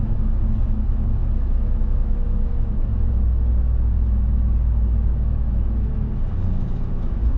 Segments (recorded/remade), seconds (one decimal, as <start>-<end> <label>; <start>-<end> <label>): 0.0-1.2 recorded; 1.2-2.5 remade; 2.5-2.9 recorded; 2.9-7.4 remade